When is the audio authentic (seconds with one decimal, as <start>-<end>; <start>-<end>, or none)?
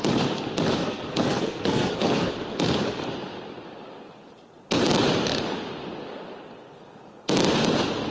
0.0-0.8; 2.3-8.1